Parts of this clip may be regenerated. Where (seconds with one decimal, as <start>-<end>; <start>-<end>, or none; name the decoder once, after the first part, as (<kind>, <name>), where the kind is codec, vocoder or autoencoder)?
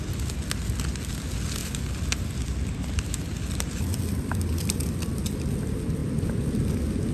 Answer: 1.6-5.2 (vocoder, BigVGAN v2)